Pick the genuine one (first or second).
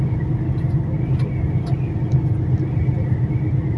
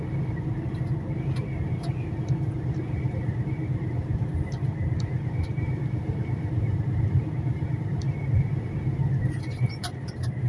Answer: first